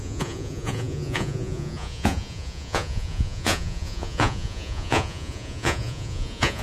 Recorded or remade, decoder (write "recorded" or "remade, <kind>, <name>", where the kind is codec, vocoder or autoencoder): remade, vocoder, Vocos